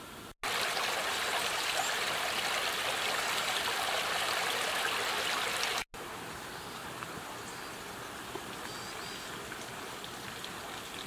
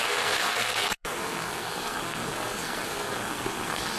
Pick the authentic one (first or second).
first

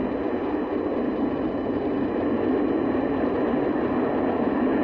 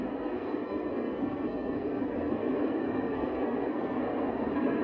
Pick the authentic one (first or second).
first